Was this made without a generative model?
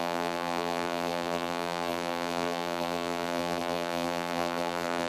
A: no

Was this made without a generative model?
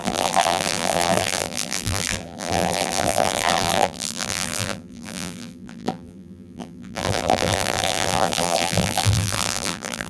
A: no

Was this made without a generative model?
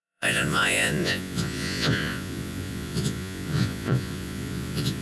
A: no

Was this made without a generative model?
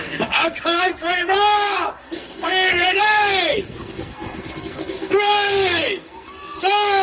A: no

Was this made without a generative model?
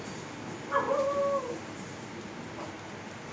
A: yes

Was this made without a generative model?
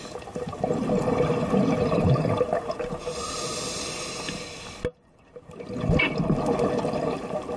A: yes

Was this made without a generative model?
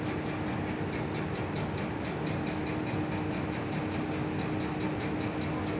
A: yes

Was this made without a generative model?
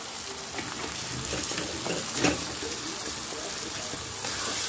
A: yes